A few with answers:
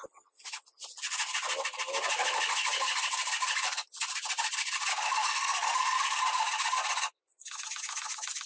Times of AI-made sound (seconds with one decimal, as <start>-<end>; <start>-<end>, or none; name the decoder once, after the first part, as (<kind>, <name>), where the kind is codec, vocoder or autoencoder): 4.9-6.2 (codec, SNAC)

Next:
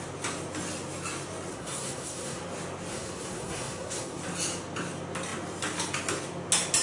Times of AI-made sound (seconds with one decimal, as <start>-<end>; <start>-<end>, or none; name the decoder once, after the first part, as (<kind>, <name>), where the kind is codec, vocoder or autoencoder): 1.5-2.4 (codec, SNAC); 2.9-4.2

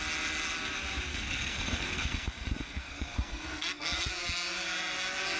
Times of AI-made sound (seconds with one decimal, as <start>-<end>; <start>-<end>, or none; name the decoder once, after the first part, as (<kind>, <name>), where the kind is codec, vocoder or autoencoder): 1.1-4.1 (codec, SNAC)